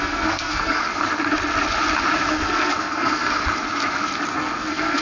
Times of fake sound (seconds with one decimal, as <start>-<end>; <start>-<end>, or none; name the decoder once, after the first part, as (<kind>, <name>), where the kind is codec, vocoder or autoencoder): 0.0-0.8 (codec, SNAC); 2.3-3.4; 4.3-5.0